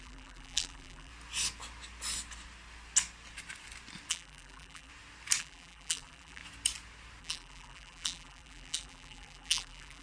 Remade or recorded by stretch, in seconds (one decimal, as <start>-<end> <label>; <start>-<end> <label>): 0.0-1.1 remade; 1.1-4.1 recorded; 4.1-4.9 remade; 4.9-5.4 recorded; 5.4-6.4 remade; 6.4-7.2 recorded; 7.2-10.0 remade